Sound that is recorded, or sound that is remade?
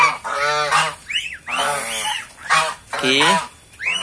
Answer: recorded